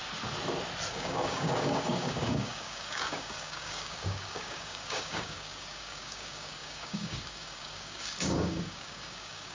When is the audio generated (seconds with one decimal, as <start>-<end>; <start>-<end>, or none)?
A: 0.9-9.5